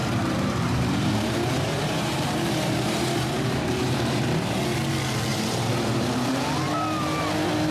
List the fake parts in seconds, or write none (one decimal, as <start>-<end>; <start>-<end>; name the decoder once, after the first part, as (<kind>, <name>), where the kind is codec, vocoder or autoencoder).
0.0-4.6 (vocoder, BigVGAN v2); 5.3-6.2